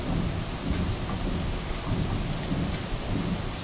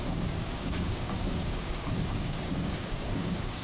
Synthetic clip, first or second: second